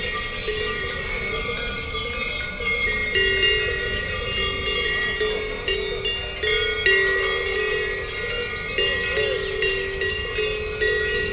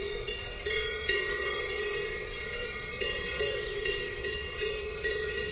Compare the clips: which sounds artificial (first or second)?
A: second